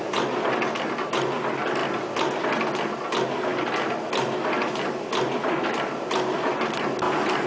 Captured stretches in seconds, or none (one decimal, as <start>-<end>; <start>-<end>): 0.0-7.5